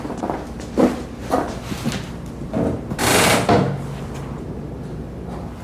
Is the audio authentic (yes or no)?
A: yes